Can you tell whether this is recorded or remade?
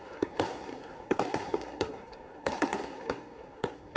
remade